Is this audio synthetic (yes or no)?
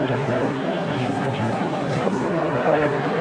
yes